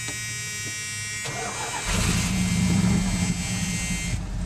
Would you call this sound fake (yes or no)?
no